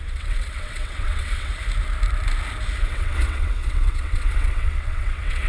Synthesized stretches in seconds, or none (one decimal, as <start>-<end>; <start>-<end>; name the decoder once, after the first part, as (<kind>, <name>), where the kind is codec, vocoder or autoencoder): 0.0-1.5 (vocoder, WaveNeXt); 2.8-5.5